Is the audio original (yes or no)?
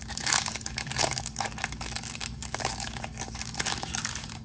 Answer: no